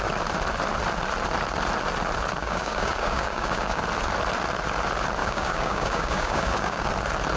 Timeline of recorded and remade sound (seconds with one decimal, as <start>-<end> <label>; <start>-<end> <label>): 0.0-2.4 recorded; 2.4-3.8 remade; 3.8-5.2 recorded; 5.2-6.9 remade; 6.9-7.4 recorded